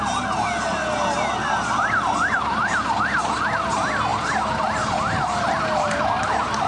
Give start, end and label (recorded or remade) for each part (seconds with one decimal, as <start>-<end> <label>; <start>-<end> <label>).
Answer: 0.0-6.7 recorded